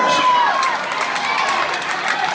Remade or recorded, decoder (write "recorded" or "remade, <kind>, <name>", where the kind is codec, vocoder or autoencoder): recorded